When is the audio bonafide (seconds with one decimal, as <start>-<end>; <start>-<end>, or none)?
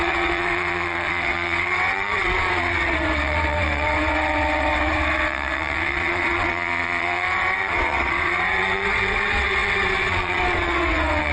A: none